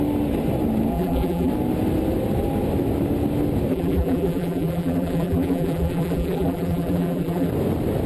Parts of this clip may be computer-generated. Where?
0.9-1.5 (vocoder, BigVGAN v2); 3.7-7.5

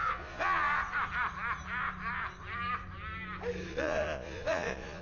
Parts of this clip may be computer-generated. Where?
0.0-0.8 (vocoder, Vocos); 3.7-5.0

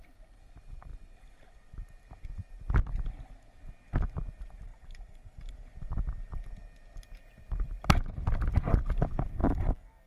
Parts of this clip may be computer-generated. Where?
4.7-5.5 (vocoder, BigVGAN v2); 9.4-10.1

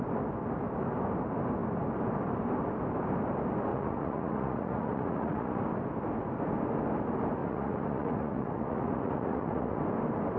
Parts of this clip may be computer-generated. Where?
3.7-5.6 (vocoder, Vocos); 7.4-9.8

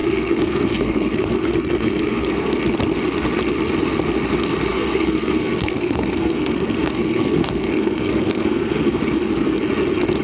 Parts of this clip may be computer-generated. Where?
0.0-2.6 (codec, SNAC); 4.7-9.0